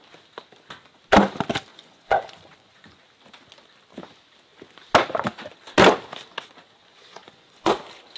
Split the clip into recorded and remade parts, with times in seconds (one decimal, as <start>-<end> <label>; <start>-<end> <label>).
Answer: 0.0-1.7 recorded; 1.7-3.0 remade; 3.0-6.8 recorded; 6.8-7.7 remade; 7.7-8.2 recorded